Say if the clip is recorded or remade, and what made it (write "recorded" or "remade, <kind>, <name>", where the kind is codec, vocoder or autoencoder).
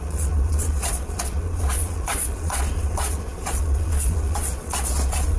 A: remade, vocoder, Vocos